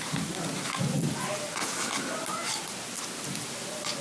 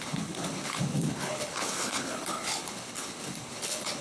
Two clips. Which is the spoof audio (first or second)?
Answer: second